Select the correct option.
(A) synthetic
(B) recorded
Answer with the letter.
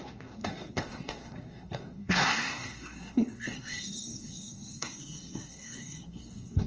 A